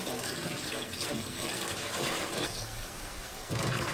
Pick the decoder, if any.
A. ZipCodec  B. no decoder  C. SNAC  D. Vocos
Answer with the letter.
C